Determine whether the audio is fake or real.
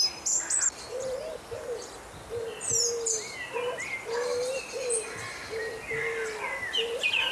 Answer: real